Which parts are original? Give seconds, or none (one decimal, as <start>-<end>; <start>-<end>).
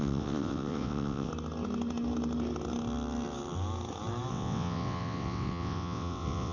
1.3-4.3